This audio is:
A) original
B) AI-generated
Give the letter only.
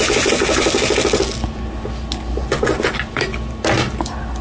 A